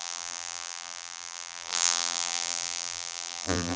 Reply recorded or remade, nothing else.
remade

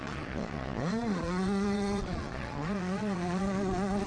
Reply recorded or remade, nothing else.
remade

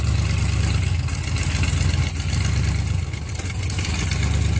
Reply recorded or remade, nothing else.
recorded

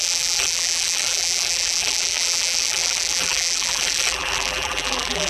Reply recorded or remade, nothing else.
remade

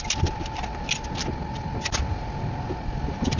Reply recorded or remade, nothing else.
recorded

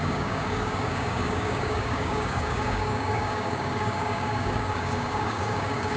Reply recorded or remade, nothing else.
remade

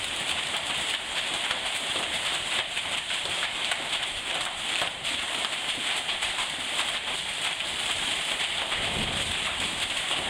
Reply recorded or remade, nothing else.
remade